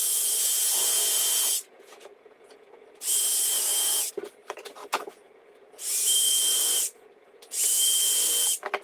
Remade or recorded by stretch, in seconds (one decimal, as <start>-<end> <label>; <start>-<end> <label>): 0.0-4.1 remade; 4.1-4.8 recorded; 4.8-8.3 remade; 8.3-8.8 recorded